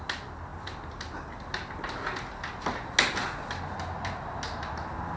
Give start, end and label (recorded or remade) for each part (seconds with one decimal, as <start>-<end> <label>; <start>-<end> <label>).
0.0-5.2 recorded